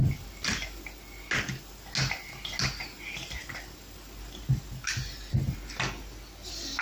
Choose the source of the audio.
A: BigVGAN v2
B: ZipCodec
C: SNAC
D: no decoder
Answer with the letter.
D